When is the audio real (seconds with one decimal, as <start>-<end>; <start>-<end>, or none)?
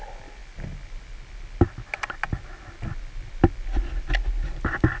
0.0-5.0